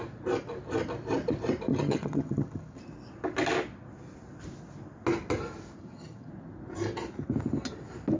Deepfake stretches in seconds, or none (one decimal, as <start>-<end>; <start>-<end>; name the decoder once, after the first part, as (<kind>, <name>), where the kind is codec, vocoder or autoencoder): 1.7-2.8 (vocoder, HiFi-GAN); 5.8-6.3